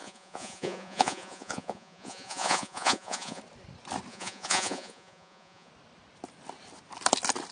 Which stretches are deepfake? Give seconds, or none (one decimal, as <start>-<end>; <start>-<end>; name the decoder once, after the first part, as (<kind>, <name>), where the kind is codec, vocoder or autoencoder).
0.0-3.4 (vocoder, Vocos); 4.1-5.7